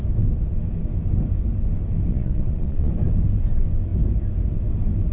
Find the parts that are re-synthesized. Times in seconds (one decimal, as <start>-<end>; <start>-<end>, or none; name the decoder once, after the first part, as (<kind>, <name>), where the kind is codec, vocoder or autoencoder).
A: 2.1-2.9 (vocoder, Vocos)